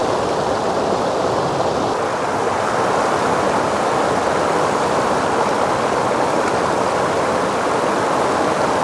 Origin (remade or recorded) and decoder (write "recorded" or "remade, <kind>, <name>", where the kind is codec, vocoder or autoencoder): recorded